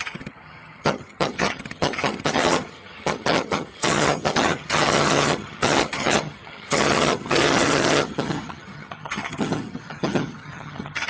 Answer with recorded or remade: remade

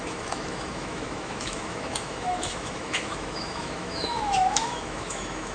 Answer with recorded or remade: remade